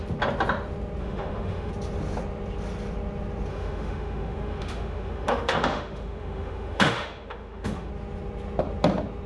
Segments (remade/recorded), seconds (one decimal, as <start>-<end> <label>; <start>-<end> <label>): 0.0-1.0 recorded; 1.0-1.7 remade; 1.7-3.5 recorded; 3.5-7.9 remade; 7.9-9.3 recorded